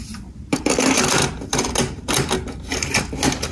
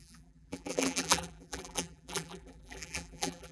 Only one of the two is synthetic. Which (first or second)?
second